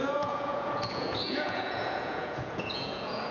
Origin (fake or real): fake